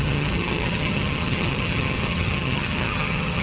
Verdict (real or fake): fake